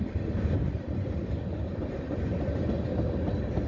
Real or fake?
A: real